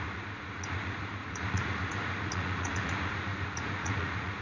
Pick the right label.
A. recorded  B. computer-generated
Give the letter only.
B